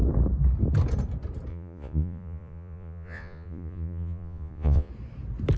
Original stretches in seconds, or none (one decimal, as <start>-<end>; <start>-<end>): 0.0-1.5; 4.9-5.6